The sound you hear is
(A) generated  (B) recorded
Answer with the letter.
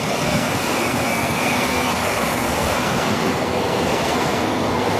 A